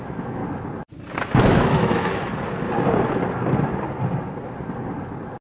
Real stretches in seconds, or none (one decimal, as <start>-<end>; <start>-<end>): 0.4-1.4; 2.3-5.4

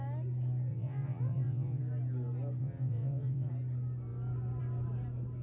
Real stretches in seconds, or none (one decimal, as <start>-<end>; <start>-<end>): 0.0-0.7; 1.8-2.6; 3.5-5.4

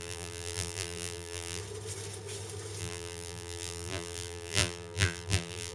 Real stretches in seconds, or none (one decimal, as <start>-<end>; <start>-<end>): 1.6-2.8

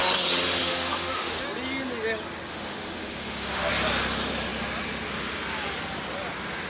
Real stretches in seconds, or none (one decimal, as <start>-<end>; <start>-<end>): 0.0-0.6; 1.4-2.5; 3.7-6.7

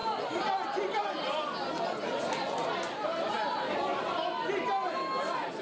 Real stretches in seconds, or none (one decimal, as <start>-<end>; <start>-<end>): 0.0-5.6